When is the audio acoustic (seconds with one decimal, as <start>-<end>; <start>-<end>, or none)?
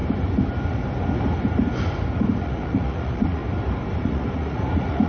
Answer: 0.0-2.4; 3.4-4.0